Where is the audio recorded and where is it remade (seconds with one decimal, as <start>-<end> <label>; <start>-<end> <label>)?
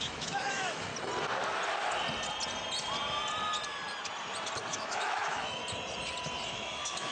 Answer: 0.0-0.9 remade; 0.9-4.7 recorded; 4.7-5.6 remade; 5.6-6.5 recorded; 6.5-7.1 remade